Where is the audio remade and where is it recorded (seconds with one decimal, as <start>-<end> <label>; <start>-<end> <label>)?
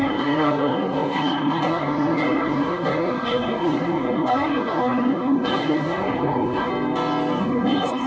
0.0-6.7 remade; 6.7-7.4 recorded; 7.4-8.1 remade